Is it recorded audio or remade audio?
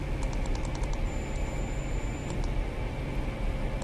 recorded